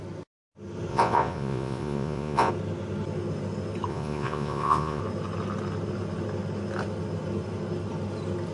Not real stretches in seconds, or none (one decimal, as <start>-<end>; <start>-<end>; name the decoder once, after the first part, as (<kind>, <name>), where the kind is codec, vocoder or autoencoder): 0.9-2.5 (vocoder, Vocos); 3.9-5.0